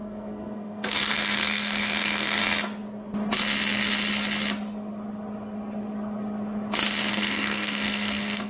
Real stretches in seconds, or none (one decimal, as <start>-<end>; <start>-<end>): 2.4-7.1